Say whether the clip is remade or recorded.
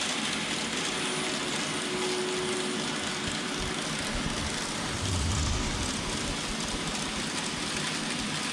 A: recorded